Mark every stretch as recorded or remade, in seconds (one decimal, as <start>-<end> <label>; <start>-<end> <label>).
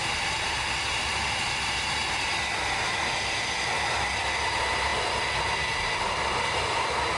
0.0-7.2 recorded